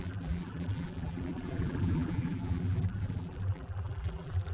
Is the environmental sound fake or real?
fake